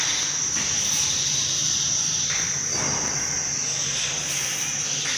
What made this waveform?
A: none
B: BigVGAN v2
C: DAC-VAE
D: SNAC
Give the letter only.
A